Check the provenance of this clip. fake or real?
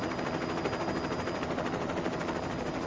real